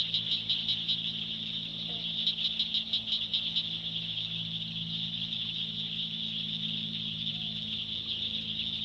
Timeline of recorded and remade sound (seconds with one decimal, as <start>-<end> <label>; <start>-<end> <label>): 0.0-8.8 recorded